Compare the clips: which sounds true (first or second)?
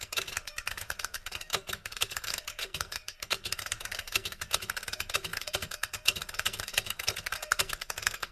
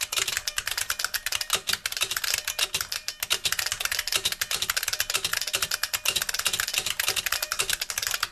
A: second